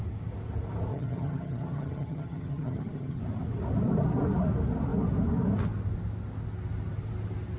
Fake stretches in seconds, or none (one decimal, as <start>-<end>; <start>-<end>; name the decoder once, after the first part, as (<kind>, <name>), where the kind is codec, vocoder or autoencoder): 0.9-3.2 (vocoder, HiFi-GAN)